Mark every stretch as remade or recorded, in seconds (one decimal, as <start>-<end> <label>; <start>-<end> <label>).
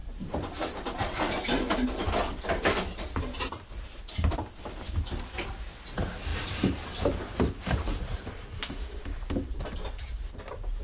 0.0-3.4 remade; 3.4-6.3 recorded; 6.3-7.2 remade; 7.2-10.8 recorded